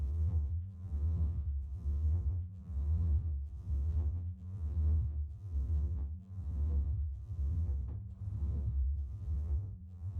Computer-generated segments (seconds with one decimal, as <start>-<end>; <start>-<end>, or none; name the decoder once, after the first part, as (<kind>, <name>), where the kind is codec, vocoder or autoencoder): 0.0-7.8 (vocoder, BigVGAN v2); 8.4-10.2